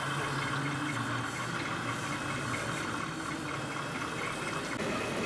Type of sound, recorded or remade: recorded